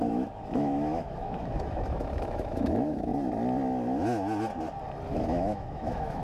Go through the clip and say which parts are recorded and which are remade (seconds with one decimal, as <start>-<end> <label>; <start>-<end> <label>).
0.0-3.1 remade; 3.1-5.1 recorded; 5.1-6.2 remade